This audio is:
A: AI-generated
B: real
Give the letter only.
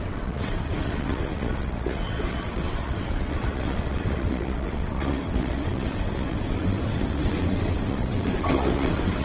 A